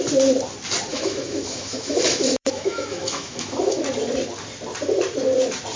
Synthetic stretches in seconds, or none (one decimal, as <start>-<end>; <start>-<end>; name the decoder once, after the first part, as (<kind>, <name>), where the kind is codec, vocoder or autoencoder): 0.9-3.8 (autoencoder, DAC-VAE)

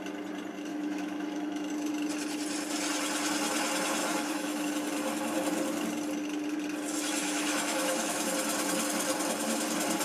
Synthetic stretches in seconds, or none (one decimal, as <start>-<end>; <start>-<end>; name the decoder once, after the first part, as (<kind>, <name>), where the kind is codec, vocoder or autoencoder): 0.7-1.7 (autoencoder, DAC-VAE); 4.0-4.7; 7.2-8.3